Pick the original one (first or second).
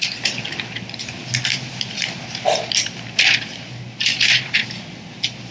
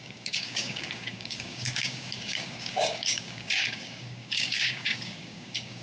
first